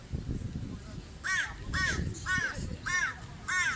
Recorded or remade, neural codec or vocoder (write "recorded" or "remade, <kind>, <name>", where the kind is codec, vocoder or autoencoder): recorded